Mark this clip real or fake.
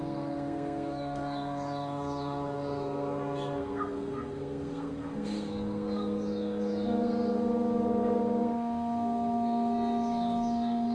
fake